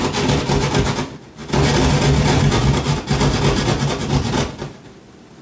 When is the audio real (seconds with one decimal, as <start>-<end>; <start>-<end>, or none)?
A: 0.0-5.4